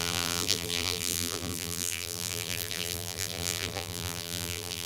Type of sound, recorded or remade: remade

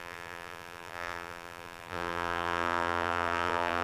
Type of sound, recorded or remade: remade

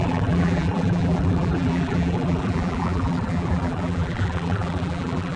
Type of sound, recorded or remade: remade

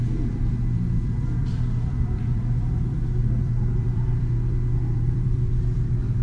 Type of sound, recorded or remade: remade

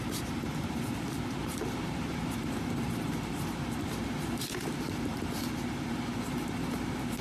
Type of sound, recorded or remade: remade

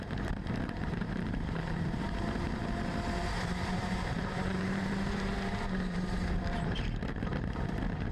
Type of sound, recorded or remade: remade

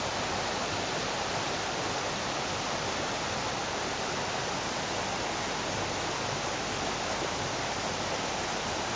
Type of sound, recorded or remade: recorded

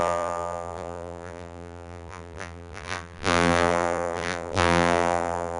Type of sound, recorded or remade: remade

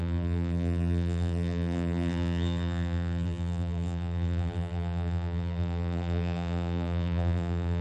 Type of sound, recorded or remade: remade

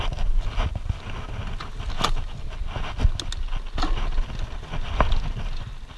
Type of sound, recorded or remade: recorded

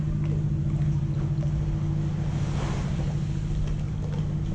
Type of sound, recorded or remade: recorded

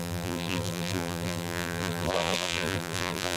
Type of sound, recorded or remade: remade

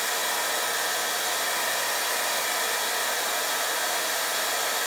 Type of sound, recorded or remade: recorded